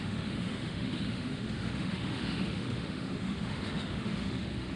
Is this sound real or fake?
fake